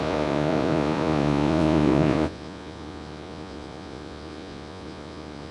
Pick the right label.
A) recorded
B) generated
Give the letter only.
B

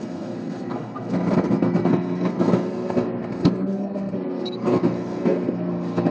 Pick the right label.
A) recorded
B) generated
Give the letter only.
B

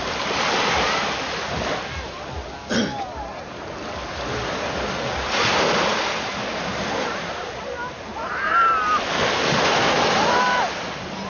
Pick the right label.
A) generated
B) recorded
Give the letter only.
B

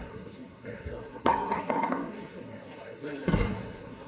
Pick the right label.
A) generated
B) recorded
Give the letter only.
A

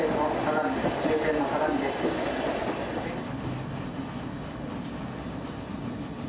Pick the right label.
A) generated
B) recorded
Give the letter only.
B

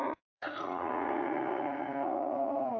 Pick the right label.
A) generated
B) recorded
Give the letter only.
A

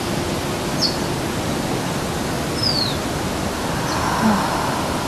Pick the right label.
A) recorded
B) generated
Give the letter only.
A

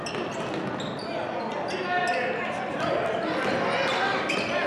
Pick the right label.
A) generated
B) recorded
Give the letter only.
B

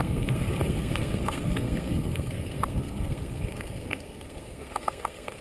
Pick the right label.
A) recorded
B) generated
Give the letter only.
B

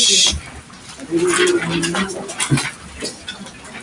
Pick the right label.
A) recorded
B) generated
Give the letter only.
A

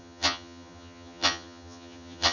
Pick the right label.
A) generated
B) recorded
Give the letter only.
A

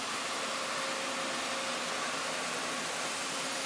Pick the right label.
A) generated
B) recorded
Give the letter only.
B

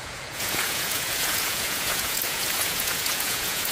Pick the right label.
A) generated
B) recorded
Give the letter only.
A